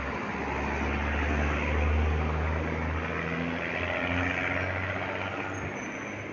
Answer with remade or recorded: recorded